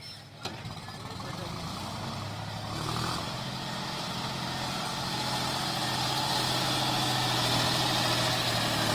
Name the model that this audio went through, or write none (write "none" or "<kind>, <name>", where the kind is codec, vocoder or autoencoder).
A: none